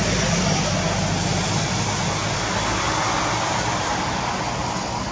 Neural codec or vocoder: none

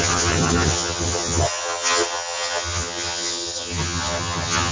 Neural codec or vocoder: vocoder, HiFi-GAN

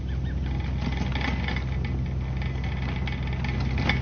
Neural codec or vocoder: none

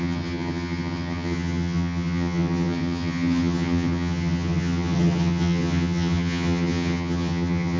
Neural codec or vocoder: vocoder, HiFi-GAN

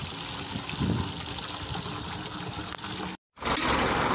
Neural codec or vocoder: none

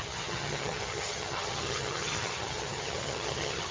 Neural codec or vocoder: vocoder, HiFi-GAN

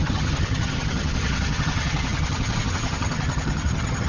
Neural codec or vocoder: vocoder, HiFi-GAN